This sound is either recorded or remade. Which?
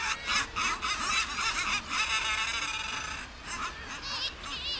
recorded